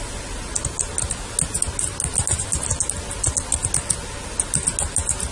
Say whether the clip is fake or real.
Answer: real